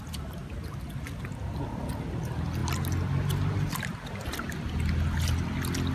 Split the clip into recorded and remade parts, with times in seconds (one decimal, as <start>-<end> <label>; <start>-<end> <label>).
0.0-5.9 recorded